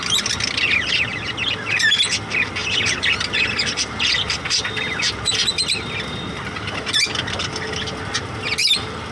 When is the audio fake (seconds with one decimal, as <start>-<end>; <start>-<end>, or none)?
none